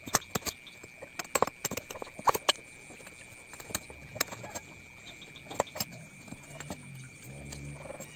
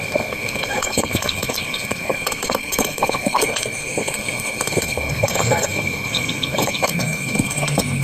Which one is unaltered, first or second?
first